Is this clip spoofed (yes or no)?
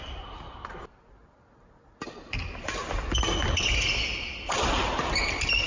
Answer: no